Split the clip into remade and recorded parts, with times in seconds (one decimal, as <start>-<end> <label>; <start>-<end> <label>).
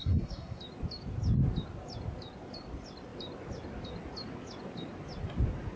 0.0-0.6 remade; 0.6-5.8 recorded